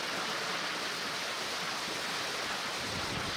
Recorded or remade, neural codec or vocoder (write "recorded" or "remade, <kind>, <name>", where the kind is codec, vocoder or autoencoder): recorded